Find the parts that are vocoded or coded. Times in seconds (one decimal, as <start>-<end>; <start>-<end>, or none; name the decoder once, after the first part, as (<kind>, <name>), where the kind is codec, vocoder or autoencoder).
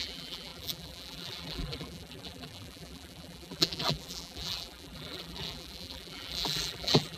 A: 0.0-7.2 (vocoder, BigVGAN v2)